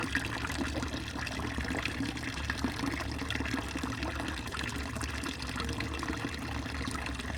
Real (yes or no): yes